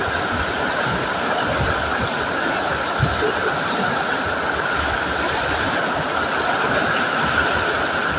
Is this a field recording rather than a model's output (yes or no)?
yes